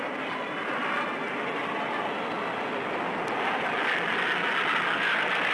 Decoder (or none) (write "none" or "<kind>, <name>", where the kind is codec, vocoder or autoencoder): none